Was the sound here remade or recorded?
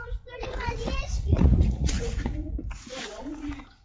remade